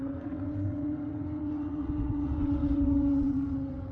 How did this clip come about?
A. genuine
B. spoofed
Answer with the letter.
B